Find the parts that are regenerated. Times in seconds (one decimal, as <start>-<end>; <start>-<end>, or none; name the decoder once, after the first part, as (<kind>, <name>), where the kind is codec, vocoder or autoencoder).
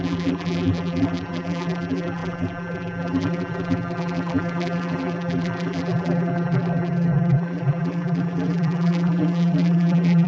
0.0-10.3 (vocoder, BigVGAN v2)